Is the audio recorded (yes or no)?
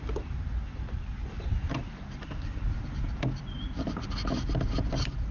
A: yes